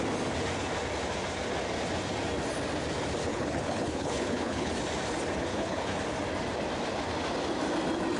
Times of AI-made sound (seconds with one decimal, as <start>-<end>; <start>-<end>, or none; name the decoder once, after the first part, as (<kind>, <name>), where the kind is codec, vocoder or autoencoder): 3.3-4.7 (codec, HILCodec); 5.5-6.0